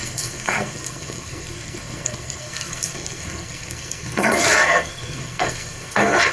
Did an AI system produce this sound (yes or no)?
yes